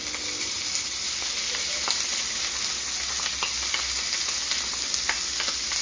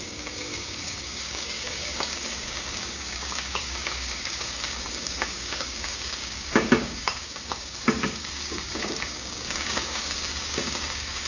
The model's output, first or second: second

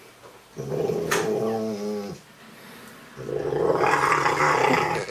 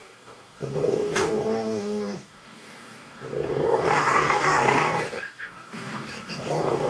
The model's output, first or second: second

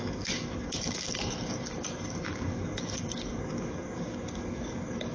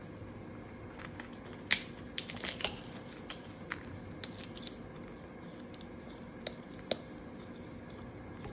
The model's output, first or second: first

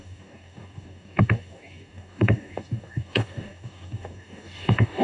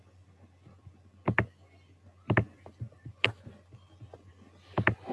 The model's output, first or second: first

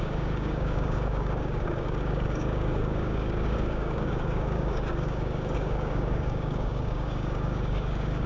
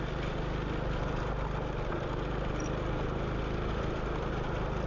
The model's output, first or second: first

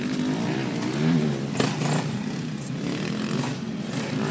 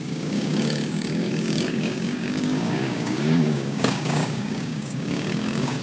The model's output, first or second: second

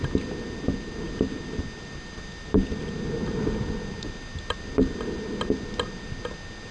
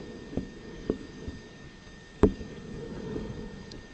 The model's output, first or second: second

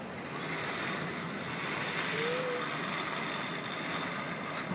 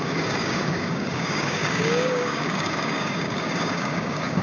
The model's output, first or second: second